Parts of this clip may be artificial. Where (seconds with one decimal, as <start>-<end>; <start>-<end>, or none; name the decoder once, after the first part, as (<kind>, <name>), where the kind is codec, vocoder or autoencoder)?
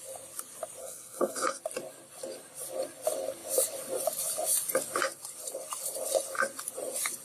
0.8-1.6 (codec, SNAC)